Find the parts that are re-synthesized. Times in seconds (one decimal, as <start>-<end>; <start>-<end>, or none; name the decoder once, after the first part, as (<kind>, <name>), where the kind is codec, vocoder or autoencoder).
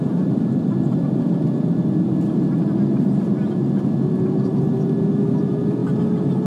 none